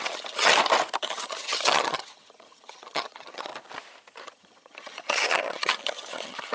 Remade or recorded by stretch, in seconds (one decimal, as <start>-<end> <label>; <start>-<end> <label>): 0.0-0.5 remade; 0.5-1.0 recorded; 1.0-3.5 remade; 3.5-4.2 recorded; 4.2-6.5 remade